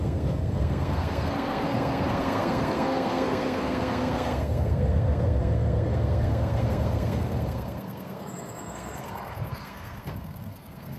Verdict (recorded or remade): remade